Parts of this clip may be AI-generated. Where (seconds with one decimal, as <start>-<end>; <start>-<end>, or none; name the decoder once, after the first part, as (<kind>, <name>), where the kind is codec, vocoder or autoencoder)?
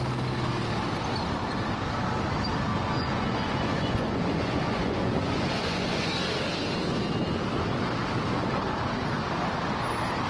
2.7-6.1 (vocoder, Vocos)